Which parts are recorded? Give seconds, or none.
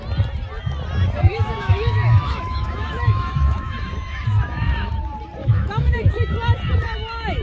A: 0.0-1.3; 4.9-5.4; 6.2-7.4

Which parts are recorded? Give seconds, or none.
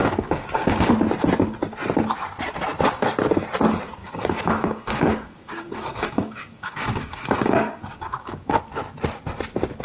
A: 0.9-4.0; 8.6-9.8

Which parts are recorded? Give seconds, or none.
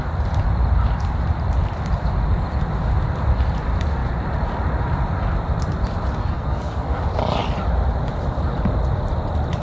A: 0.0-6.2; 7.0-9.6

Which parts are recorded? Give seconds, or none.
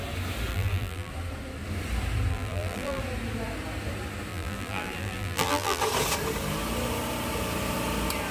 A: 0.0-0.5; 1.1-2.3; 3.0-4.3; 5.8-8.3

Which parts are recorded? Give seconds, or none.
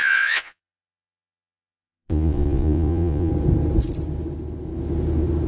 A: 3.3-5.5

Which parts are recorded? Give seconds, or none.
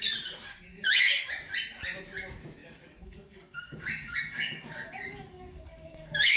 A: 0.0-0.7; 1.3-2.6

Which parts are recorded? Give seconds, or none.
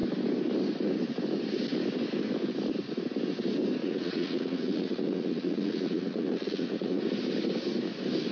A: 0.0-3.8; 7.0-8.3